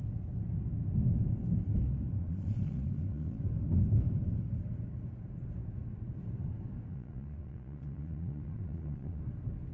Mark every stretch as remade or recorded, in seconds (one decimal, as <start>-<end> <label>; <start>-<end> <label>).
0.0-2.2 recorded; 2.2-3.4 remade; 3.4-6.9 recorded; 6.9-9.2 remade; 9.2-9.7 recorded